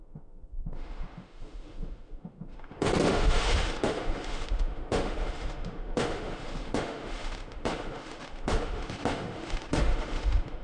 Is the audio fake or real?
fake